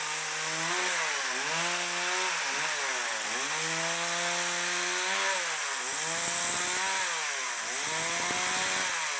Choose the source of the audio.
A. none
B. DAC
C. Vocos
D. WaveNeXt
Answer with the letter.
A